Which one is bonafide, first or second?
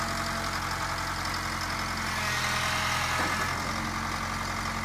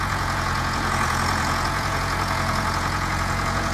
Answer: first